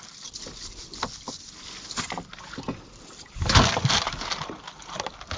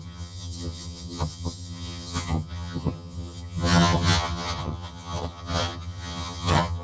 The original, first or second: first